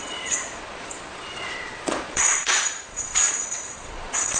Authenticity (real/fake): fake